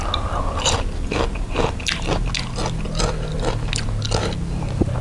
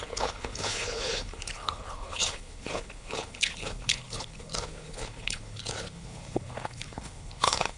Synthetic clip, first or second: second